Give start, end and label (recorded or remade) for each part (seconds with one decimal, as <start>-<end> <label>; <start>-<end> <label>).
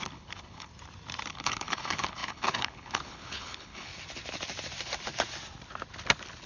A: 0.0-0.7 remade; 0.7-1.3 recorded; 1.3-3.9 remade; 3.9-6.5 recorded